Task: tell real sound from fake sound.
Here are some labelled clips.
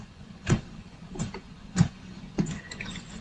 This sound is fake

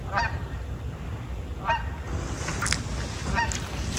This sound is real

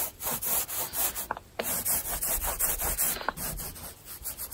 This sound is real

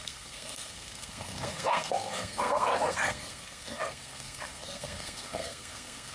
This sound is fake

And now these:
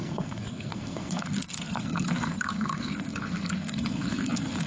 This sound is fake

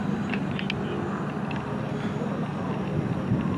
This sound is real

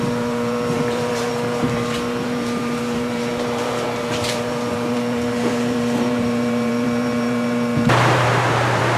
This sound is fake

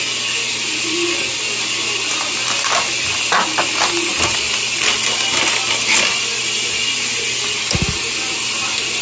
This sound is real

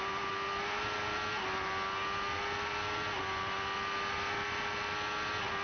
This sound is real